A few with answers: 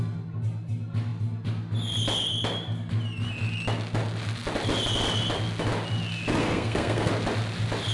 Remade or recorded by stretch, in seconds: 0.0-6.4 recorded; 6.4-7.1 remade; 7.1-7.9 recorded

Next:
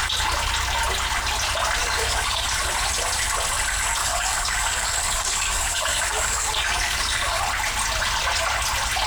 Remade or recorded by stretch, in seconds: 0.0-1.8 recorded; 1.8-2.5 remade; 2.5-4.0 recorded; 4.0-7.4 remade; 7.4-9.1 recorded

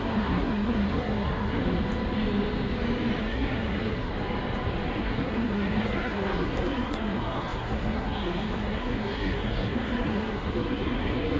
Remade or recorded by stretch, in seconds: 0.0-1.6 remade; 1.6-3.2 recorded; 3.2-4.1 remade; 4.1-5.0 recorded; 5.0-11.4 remade

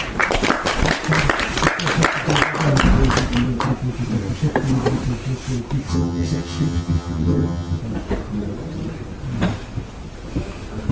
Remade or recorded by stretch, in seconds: 0.0-5.9 recorded; 5.9-7.8 remade; 7.8-10.9 recorded

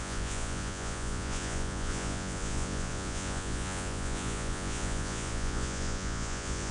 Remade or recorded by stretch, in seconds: 0.0-6.7 remade

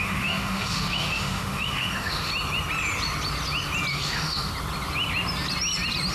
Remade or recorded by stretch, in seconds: 0.0-2.3 remade; 2.3-3.9 recorded; 3.9-4.5 remade; 4.5-6.1 recorded